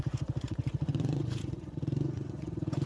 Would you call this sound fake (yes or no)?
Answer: yes